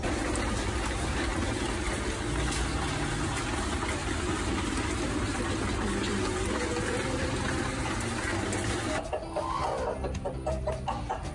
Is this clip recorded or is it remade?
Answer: recorded